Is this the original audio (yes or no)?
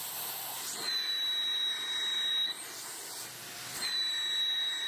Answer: yes